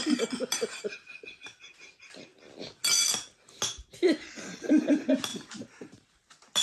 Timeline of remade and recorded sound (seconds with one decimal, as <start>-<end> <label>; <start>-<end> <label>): 0.0-5.3 recorded; 5.3-6.1 remade; 6.1-6.6 recorded